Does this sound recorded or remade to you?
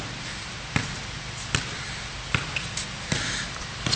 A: recorded